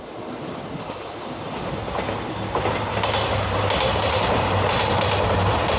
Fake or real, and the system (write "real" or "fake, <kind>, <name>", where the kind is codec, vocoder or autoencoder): real